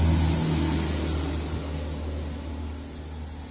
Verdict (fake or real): real